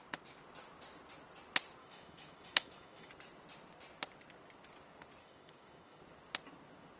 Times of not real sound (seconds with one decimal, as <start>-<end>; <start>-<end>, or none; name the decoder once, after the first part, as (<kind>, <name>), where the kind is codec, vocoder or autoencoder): 1.8-3.1 (autoencoder, DAC-VAE); 5.2-6.0